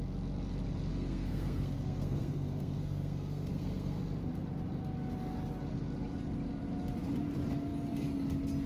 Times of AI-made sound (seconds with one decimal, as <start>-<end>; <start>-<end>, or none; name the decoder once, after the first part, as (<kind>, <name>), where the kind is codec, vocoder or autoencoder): 0.9-4.0 (codec, SNAC)